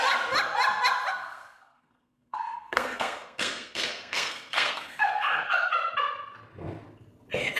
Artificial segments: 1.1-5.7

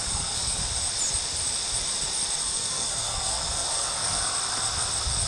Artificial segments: 0.0-0.6; 2.4-4.3

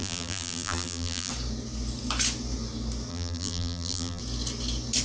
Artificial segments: 0.0-1.3; 3.1-4.2

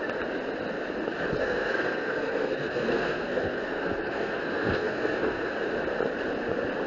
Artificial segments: 1.4-5.5

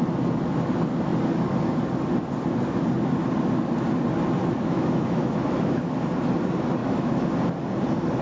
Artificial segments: 4.4-5.9; 6.8-7.3

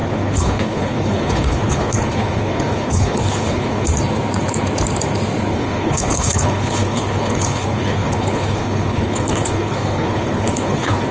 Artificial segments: 0.0-3.9; 5.5-11.1

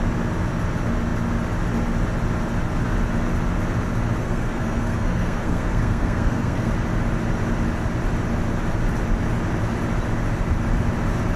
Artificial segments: 4.2-6.7